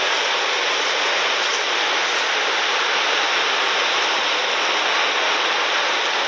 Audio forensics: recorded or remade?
recorded